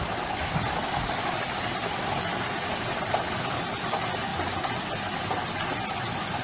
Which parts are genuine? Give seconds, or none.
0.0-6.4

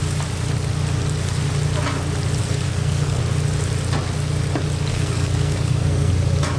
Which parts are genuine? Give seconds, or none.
0.0-2.4; 3.2-4.9; 6.1-6.6